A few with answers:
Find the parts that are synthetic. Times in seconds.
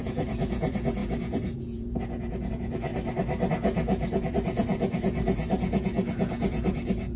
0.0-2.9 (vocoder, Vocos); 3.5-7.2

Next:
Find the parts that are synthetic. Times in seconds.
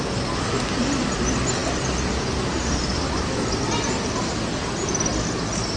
none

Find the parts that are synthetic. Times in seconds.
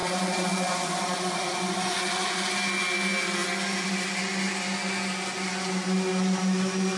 0.0-2.5 (vocoder, Vocos)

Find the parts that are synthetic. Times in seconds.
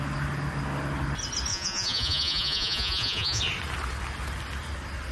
1.5-3.4 (vocoder, Vocos)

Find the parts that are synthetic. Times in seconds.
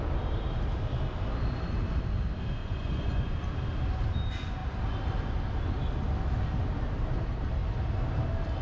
2.6-3.4 (vocoder, Vocos)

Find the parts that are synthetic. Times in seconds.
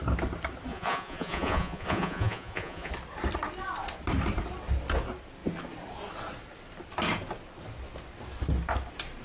0.7-2.9 (vocoder, Vocos)